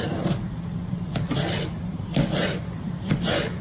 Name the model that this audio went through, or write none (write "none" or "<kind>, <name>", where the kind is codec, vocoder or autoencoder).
vocoder, BigVGAN v2